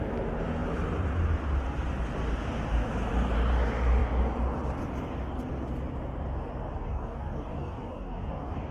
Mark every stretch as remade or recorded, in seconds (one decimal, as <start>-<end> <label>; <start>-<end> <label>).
0.0-6.8 recorded; 6.8-8.7 remade